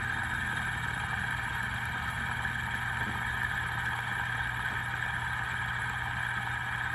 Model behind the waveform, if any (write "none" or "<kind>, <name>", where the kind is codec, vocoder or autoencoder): none